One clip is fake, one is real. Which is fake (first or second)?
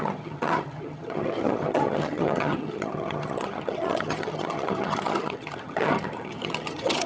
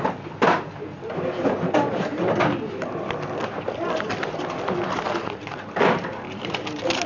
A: first